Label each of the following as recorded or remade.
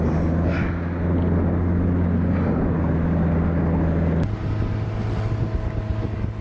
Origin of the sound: recorded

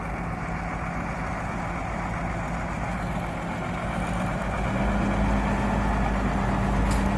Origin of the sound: recorded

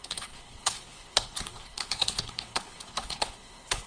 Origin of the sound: remade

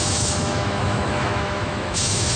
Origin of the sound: remade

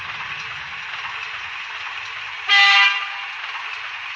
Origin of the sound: recorded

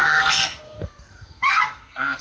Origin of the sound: remade